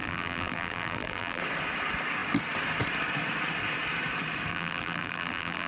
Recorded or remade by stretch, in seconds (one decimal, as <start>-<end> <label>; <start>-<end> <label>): 0.0-1.4 remade; 1.4-4.5 recorded; 4.5-5.7 remade